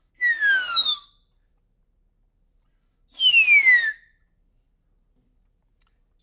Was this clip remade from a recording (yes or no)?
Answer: no